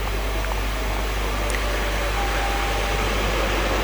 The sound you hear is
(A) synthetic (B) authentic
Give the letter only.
B